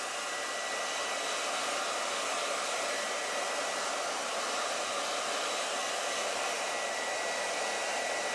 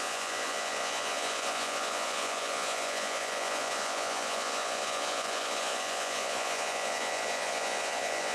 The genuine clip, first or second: first